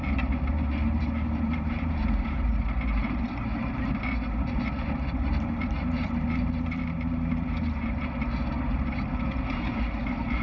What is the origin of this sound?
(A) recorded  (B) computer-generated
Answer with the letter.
B